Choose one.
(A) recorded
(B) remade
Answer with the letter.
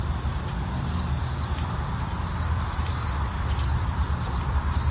B